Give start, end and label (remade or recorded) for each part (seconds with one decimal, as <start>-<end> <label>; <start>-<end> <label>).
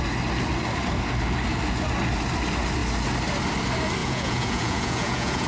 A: 0.0-4.0 recorded; 4.0-5.5 remade